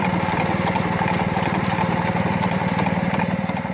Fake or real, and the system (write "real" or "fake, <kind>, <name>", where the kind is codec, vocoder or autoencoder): real